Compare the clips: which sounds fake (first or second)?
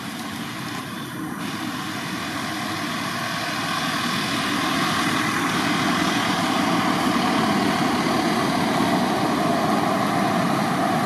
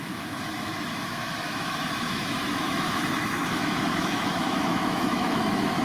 second